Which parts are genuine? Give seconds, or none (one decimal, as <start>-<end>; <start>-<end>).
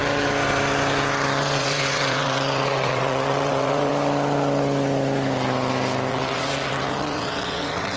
0.0-1.4; 3.9-6.1